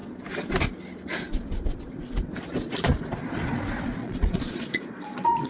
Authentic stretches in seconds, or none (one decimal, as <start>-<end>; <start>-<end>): 0.0-4.0